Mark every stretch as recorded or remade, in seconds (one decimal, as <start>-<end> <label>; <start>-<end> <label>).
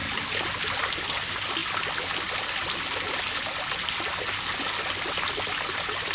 0.0-6.1 recorded